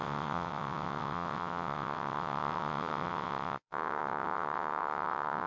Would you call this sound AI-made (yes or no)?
yes